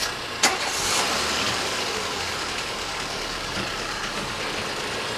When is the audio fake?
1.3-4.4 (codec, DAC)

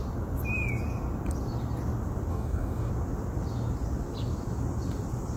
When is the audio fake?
2.3-2.9 (codec, DAC)

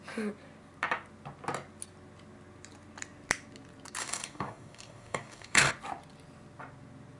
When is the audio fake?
4.0-5.7 (codec, DAC)

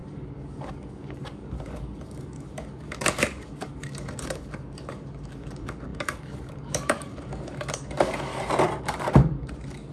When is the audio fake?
0.0-8.3 (codec, DAC); 8.8-9.9

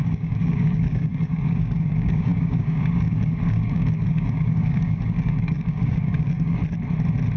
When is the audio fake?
0.0-6.6 (codec, DAC)

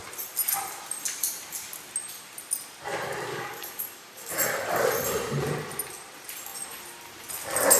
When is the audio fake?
3.3-4.3 (codec, DAC)

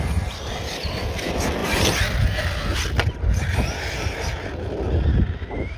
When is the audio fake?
none

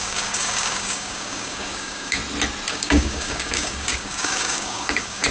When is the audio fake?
0.0-2.2 (codec, DAC); 2.7-5.3